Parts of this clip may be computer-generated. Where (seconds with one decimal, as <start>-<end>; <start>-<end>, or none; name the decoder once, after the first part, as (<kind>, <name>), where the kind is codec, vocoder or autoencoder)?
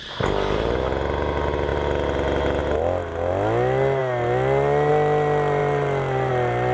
none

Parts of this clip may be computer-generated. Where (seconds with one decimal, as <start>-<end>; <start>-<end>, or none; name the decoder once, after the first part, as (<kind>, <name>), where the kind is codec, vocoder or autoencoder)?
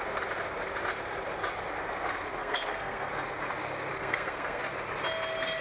2.4-3.1 (codec, SNAC); 3.9-4.6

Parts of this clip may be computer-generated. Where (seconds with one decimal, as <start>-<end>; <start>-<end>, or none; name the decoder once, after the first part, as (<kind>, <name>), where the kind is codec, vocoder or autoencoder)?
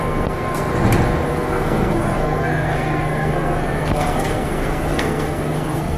0.0-0.7 (codec, SNAC); 1.3-6.0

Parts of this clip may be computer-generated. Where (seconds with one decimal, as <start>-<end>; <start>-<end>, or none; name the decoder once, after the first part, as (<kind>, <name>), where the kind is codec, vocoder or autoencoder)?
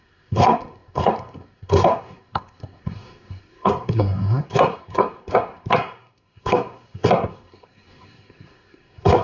0.0-9.2 (codec, SNAC)